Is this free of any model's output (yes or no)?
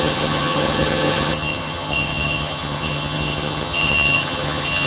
no